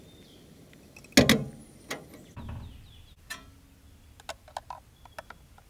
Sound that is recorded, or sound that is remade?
recorded